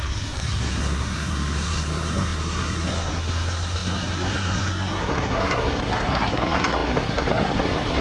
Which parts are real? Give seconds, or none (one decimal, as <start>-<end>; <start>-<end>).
none

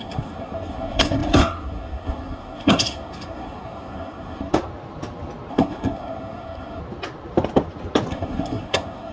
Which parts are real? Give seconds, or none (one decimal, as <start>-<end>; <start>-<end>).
4.5-5.5; 6.8-8.1

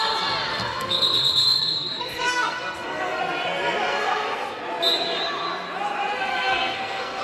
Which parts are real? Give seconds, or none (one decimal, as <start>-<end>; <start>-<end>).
0.0-0.5; 3.2-3.9; 4.6-6.3

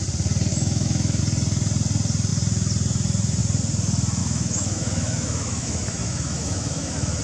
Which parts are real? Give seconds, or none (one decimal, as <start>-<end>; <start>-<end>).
0.0-0.5; 1.2-4.2